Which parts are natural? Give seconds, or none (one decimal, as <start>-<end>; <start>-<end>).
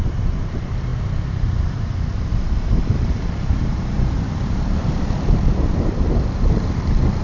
none